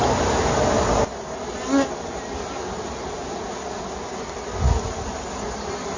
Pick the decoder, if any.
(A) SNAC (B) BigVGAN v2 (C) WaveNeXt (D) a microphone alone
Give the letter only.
D